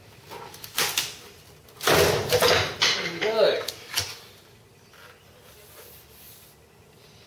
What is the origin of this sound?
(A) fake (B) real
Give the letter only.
B